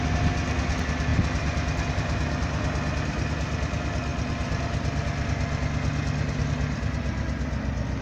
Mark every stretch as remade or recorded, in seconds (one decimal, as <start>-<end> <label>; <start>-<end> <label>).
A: 0.0-8.0 recorded